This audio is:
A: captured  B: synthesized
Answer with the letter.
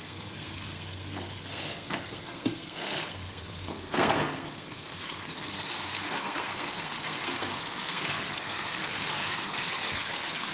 B